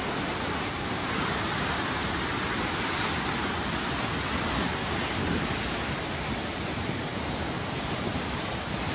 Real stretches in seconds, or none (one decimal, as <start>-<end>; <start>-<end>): 0.0-8.9